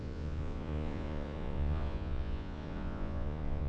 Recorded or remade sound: remade